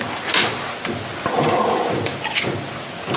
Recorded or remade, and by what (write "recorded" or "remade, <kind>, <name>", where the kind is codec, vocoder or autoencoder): recorded